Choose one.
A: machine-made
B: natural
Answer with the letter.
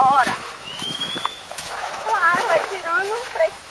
A